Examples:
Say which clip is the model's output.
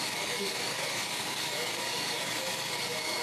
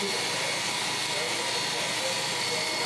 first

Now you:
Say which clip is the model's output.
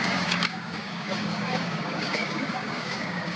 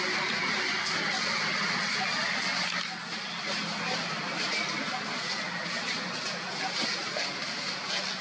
first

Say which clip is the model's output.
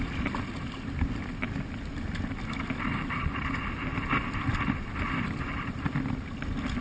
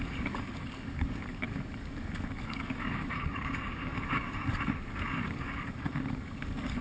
second